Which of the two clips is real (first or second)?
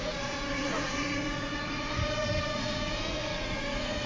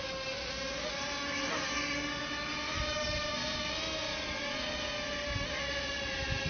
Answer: second